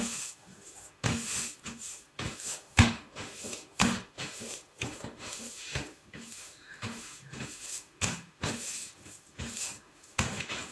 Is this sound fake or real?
fake